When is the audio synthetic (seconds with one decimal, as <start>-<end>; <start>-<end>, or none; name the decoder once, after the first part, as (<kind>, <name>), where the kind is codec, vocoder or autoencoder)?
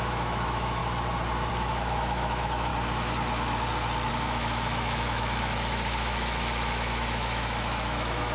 0.0-0.8 (autoencoder, DAC-VAE); 1.5-2.7; 4.1-8.3